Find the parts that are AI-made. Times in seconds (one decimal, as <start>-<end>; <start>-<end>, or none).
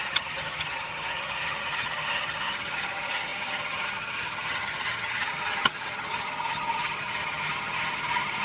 0.0-8.4